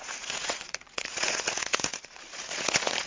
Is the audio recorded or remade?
remade